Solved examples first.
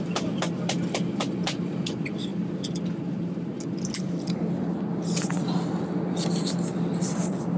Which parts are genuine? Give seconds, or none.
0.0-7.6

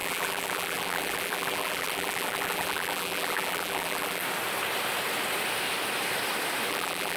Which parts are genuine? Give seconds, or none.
4.2-6.7

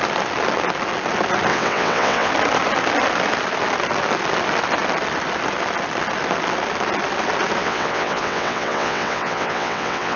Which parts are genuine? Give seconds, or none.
0.0-1.5; 2.3-7.6

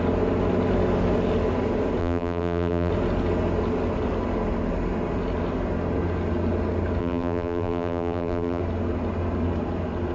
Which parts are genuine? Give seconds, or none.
0.0-2.0; 2.9-7.0; 8.6-10.1

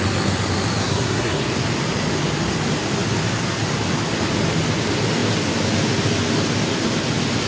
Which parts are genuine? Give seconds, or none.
0.0-0.8; 1.4-7.5

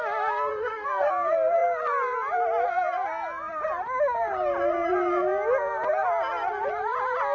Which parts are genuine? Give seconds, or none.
0.0-0.5; 1.1-7.3

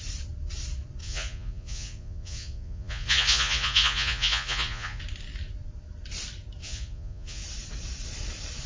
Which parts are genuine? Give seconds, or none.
0.0-1.0; 5.0-6.6; 7.4-8.7